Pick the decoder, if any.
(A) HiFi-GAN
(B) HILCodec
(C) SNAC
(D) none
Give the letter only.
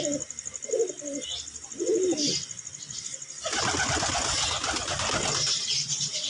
D